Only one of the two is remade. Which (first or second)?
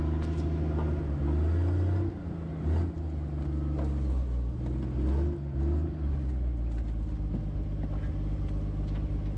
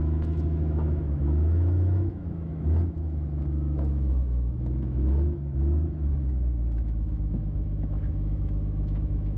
second